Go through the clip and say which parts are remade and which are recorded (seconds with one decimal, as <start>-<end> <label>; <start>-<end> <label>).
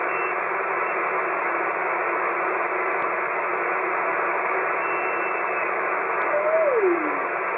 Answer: 0.0-7.6 recorded